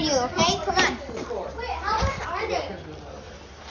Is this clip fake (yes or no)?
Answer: no